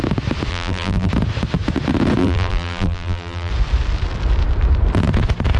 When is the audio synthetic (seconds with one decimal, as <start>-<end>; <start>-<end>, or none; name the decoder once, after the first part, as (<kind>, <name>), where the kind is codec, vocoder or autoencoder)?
0.5-1.1 (vocoder, BigVGAN v2); 2.2-3.5